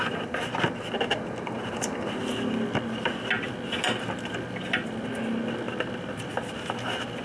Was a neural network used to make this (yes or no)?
no